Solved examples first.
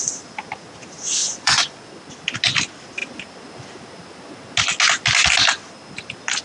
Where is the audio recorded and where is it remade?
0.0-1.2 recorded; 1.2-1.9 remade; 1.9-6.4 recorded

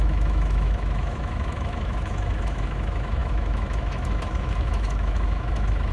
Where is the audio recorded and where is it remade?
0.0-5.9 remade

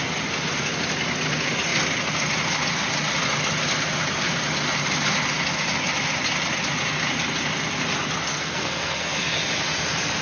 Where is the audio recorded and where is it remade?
0.0-8.3 recorded; 8.3-9.4 remade; 9.4-10.2 recorded